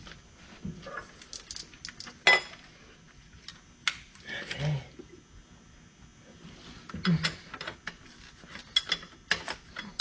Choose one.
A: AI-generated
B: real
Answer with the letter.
B